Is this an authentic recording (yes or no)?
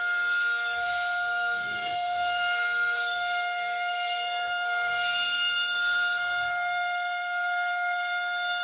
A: no